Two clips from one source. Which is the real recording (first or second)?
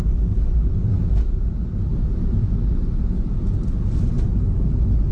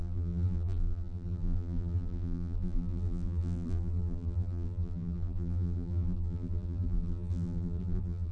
first